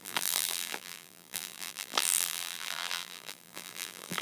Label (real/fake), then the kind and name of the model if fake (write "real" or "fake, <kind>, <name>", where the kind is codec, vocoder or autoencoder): fake, vocoder, BigVGAN v2